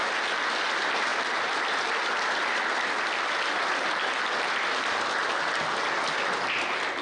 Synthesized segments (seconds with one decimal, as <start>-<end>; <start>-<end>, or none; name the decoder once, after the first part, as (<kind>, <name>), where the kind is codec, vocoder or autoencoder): none